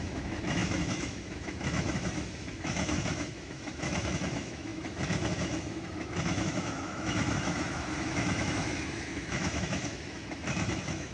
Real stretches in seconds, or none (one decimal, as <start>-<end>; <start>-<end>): none